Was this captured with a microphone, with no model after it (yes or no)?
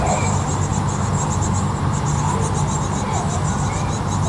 yes